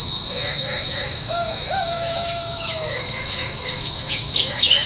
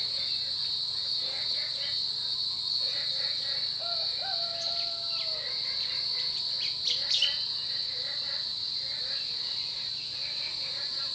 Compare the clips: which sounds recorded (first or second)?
second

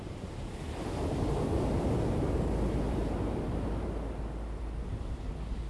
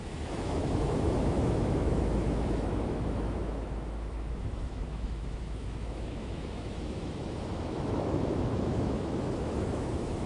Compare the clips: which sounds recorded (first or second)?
first